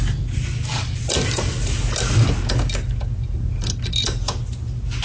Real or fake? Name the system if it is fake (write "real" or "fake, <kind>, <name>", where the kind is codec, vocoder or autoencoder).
real